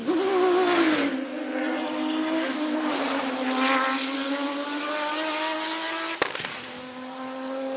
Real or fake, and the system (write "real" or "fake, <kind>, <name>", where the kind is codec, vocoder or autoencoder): real